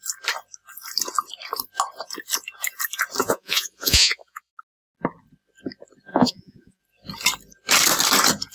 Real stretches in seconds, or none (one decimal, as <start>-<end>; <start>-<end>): 0.0-3.2; 4.5-6.1; 6.8-8.5